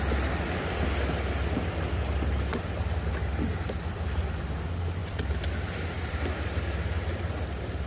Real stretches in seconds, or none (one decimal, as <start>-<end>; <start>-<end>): 0.0-5.0; 6.2-7.9